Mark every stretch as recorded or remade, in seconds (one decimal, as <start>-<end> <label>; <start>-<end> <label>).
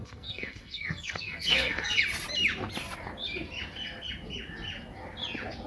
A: 0.0-2.0 remade; 2.0-5.7 recorded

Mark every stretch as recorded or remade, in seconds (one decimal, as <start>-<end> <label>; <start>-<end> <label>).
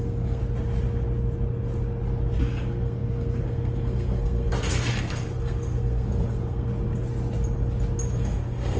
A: 0.0-0.4 remade; 0.4-2.4 recorded; 2.4-6.7 remade; 6.7-8.2 recorded; 8.2-8.8 remade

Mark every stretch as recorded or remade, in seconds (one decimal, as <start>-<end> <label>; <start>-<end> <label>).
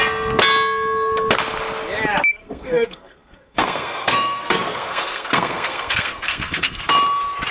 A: 0.0-2.4 recorded; 2.4-6.9 remade; 6.9-7.5 recorded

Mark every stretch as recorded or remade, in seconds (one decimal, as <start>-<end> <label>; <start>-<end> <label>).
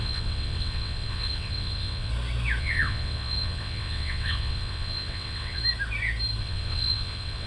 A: 0.0-2.1 remade; 2.1-2.6 recorded; 2.6-5.6 remade; 5.6-6.4 recorded; 6.4-7.5 remade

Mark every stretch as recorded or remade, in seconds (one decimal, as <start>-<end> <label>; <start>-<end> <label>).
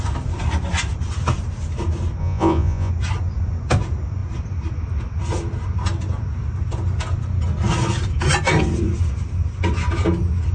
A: 0.0-2.2 recorded; 2.2-2.9 remade; 2.9-10.5 recorded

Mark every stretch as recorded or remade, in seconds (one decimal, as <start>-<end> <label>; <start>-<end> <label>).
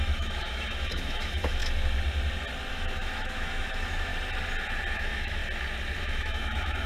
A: 0.0-1.6 remade; 1.6-2.7 recorded; 2.7-4.1 remade; 4.1-4.9 recorded; 4.9-5.4 remade; 5.4-6.0 recorded; 6.0-6.9 remade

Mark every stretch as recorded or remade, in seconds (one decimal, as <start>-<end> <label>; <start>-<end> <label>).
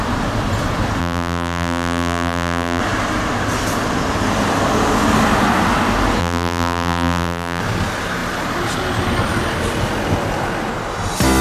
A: 0.0-1.0 recorded; 1.0-2.8 remade; 2.8-6.2 recorded; 6.2-7.6 remade; 7.6-11.4 recorded